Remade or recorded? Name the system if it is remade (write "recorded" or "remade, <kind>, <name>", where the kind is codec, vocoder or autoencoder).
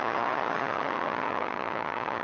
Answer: remade, vocoder, HiFi-GAN